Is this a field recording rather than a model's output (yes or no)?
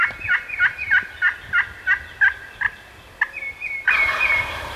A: yes